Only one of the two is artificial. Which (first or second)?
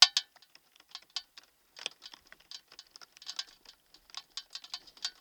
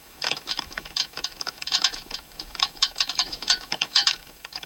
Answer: second